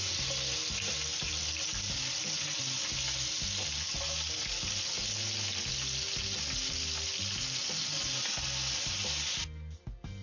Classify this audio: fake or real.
real